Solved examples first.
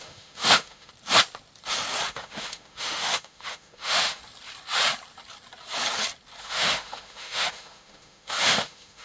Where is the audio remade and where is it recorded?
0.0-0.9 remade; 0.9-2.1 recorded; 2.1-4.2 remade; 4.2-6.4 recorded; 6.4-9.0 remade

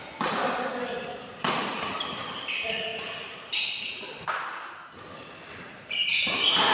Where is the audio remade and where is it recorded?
0.0-6.7 recorded